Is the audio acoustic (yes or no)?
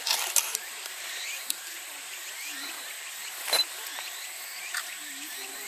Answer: yes